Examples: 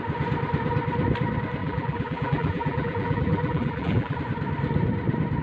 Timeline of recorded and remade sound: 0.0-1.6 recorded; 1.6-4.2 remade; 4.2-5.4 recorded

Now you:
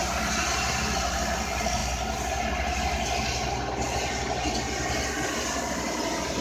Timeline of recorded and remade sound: 0.0-6.4 recorded